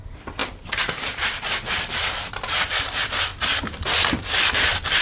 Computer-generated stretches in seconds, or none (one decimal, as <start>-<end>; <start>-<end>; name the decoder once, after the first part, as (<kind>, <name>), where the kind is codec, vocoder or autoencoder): none